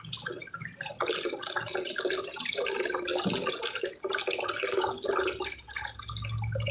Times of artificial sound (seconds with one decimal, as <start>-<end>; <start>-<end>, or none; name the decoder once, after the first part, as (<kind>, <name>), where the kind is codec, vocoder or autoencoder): none

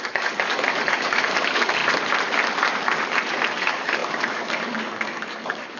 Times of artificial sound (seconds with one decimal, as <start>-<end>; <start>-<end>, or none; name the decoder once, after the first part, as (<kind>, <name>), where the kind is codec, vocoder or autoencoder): 0.0-1.8 (codec, DAC); 3.6-5.8